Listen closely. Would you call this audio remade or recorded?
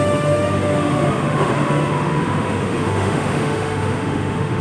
remade